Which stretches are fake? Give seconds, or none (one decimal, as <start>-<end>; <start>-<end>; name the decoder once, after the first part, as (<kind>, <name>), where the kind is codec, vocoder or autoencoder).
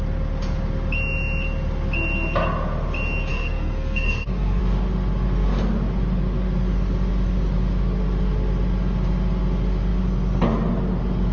3.3-4.6 (codec, SNAC)